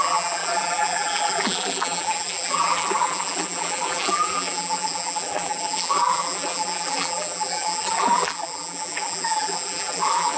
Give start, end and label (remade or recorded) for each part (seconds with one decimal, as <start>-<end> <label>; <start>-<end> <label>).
0.0-10.4 remade